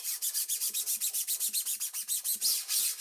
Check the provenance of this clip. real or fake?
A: real